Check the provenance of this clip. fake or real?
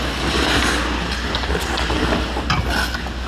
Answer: real